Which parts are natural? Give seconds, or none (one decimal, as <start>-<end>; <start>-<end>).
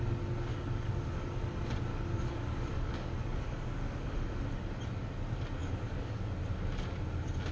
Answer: 0.0-0.5; 1.4-1.9; 4.4-5.6; 6.3-7.5